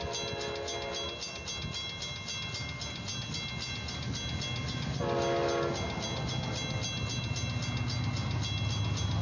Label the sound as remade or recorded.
recorded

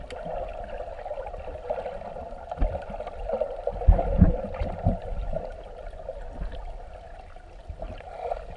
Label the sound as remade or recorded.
recorded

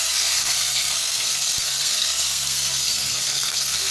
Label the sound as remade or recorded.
remade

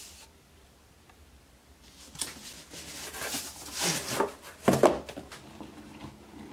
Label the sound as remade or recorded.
recorded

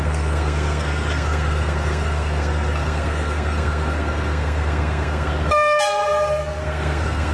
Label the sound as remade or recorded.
remade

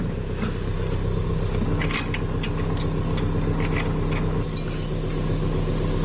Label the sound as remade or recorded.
recorded